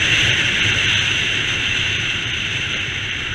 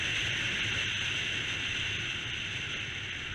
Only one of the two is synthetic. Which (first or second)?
first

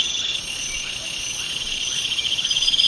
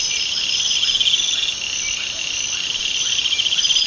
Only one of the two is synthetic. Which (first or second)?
first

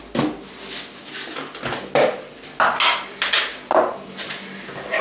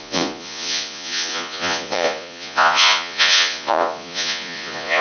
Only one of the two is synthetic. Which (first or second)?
second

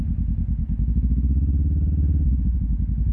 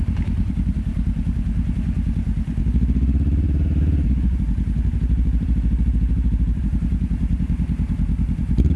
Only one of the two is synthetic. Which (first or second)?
second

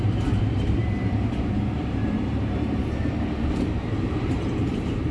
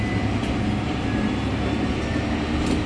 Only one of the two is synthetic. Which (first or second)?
first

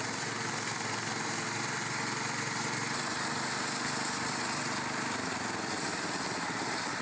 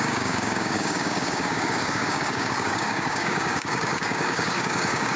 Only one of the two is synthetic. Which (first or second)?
second